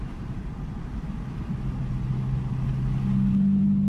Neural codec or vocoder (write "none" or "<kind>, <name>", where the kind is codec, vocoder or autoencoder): none